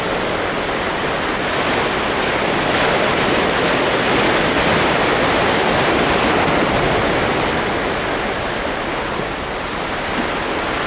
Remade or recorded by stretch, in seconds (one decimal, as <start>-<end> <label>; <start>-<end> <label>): 0.0-10.9 recorded